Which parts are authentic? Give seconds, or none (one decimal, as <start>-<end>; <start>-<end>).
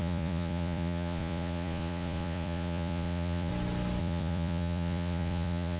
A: 3.5-4.0